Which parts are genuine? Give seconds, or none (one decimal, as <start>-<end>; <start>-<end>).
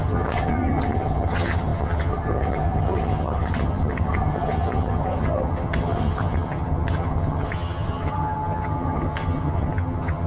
none